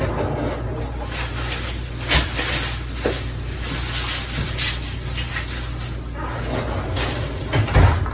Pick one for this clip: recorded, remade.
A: recorded